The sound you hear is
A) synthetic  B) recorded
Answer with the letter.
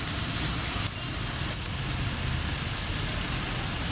B